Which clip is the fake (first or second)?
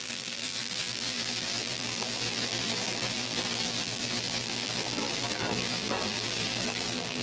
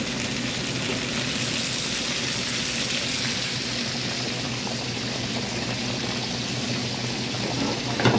first